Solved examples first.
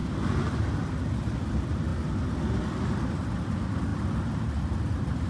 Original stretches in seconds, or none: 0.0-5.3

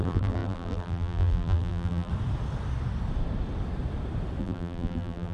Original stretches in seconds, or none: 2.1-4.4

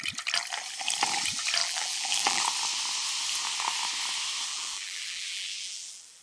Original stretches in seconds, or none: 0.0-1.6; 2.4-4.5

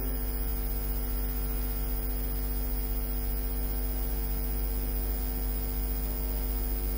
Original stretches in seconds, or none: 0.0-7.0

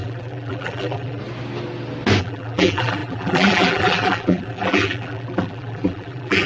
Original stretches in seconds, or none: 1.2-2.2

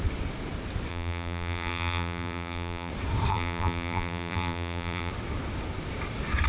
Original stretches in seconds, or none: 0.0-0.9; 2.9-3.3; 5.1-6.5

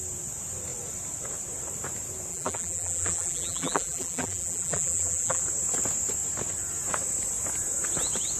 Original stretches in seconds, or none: 0.0-2.3; 5.4-8.4

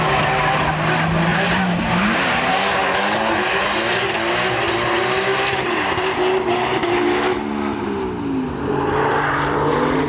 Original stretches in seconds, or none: 0.0-1.3; 2.5-10.1